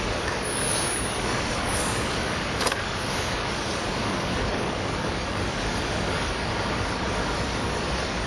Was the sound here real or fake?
fake